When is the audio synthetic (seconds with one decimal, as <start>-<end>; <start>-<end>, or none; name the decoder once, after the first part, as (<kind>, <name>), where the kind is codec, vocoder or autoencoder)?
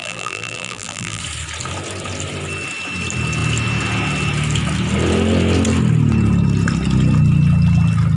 0.0-1.2 (vocoder, BigVGAN v2)